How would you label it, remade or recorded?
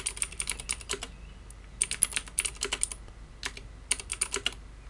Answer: recorded